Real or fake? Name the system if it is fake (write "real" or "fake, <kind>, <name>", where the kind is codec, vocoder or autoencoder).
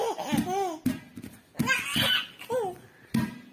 real